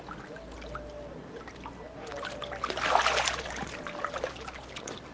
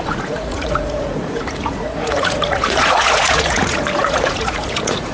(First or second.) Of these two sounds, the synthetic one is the second